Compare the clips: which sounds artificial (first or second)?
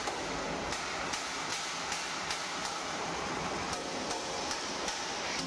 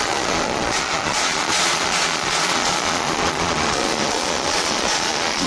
second